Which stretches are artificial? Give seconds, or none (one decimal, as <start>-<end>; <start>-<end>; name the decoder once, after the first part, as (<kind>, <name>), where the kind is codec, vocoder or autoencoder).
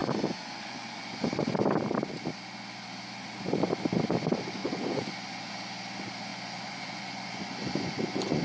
0.0-1.5 (vocoder, Vocos); 4.6-5.5; 6.3-8.4